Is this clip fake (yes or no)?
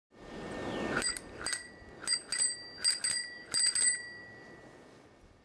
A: no